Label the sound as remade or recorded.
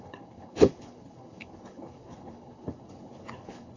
remade